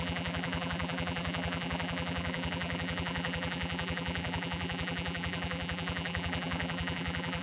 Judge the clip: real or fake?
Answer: fake